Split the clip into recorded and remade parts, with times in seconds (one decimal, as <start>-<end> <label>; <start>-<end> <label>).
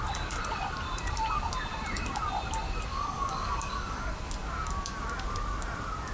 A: 0.0-2.9 recorded; 2.9-4.1 remade; 4.1-6.1 recorded